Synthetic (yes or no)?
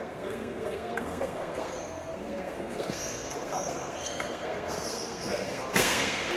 yes